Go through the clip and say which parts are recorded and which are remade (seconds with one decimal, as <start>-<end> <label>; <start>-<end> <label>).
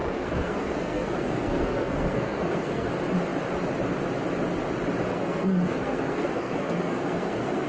0.0-2.9 remade; 2.9-5.1 recorded; 5.1-7.7 remade